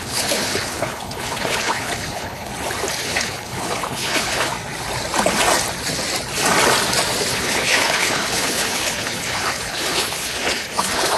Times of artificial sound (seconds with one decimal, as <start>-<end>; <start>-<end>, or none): 0.0-2.5; 3.0-4.5; 7.3-11.2